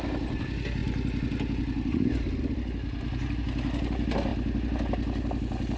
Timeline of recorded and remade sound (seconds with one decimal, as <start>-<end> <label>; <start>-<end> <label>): 0.0-5.8 recorded